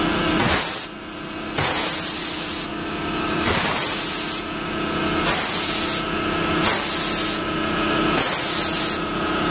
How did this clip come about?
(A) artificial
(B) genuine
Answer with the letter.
B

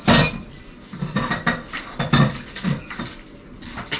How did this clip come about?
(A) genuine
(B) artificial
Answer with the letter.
A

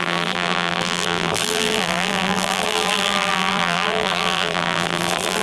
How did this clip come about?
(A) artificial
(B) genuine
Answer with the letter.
A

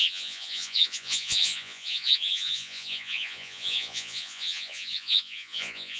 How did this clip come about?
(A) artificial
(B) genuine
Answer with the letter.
A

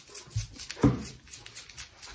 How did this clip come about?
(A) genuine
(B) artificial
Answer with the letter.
A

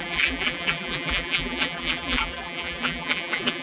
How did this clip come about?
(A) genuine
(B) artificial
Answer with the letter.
B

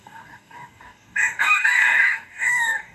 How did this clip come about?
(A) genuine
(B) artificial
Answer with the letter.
B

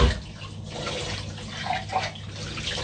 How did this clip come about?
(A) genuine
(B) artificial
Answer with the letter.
A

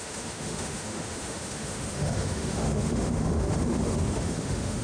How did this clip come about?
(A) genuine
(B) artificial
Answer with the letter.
B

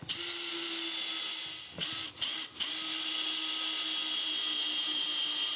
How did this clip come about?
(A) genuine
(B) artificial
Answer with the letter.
A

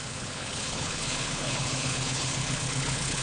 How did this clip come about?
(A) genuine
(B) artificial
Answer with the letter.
B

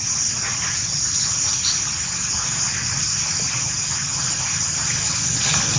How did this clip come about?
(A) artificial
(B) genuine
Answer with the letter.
B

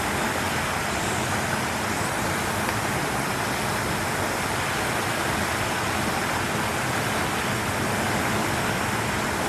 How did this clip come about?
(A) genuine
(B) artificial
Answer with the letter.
A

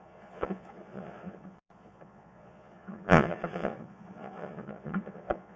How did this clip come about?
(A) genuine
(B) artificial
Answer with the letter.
B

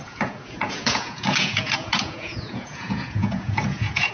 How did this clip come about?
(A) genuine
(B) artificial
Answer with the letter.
B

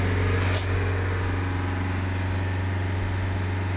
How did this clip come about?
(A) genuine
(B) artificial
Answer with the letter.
A